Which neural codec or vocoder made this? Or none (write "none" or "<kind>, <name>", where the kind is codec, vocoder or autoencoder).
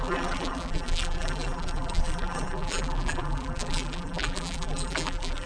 vocoder, BigVGAN v2